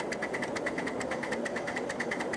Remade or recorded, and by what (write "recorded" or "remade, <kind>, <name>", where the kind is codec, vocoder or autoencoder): recorded